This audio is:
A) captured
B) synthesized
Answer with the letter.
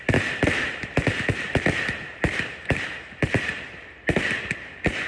B